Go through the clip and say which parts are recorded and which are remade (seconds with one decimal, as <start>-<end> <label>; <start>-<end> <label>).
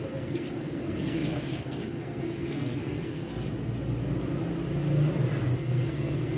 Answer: 0.0-3.3 remade; 3.3-5.6 recorded; 5.6-6.4 remade